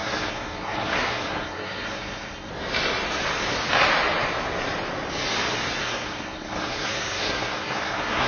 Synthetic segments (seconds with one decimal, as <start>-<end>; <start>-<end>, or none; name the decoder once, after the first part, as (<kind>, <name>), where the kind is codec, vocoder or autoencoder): 0.0-2.5 (codec, SNAC); 5.8-8.3